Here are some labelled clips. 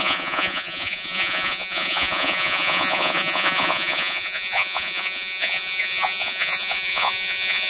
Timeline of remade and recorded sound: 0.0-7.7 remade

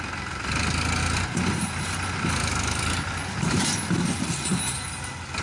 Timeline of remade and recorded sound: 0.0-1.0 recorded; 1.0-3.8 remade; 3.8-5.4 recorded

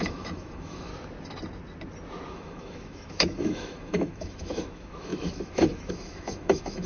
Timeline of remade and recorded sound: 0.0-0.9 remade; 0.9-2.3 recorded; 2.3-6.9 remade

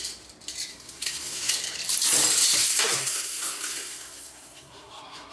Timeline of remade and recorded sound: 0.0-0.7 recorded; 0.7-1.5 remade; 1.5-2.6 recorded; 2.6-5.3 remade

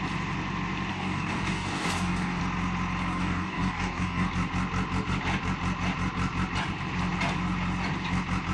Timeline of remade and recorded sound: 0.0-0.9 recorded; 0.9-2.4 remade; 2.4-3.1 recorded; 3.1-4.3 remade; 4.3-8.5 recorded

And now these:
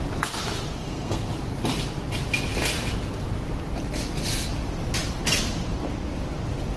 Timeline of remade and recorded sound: 0.0-0.8 recorded; 0.8-1.3 remade; 1.3-6.8 recorded